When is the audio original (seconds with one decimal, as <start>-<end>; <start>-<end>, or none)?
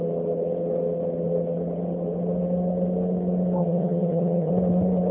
0.0-3.6; 4.5-5.1